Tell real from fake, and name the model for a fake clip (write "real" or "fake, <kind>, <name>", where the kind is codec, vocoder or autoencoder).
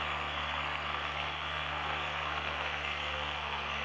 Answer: fake, codec, SNAC